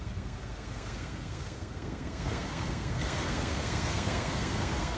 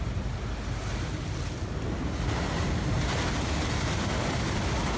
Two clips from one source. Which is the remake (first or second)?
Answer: first